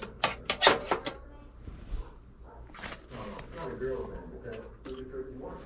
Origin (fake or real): real